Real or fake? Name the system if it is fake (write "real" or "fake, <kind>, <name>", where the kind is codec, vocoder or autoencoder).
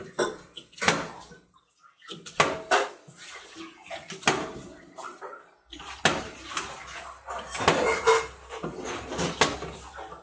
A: real